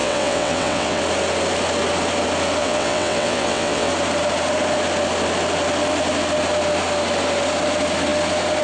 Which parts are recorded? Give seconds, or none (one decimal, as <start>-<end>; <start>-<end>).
1.0-2.6; 3.9-8.6